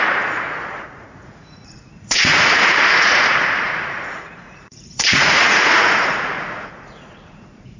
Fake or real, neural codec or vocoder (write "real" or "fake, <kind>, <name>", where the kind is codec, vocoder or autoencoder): fake, vocoder, Vocos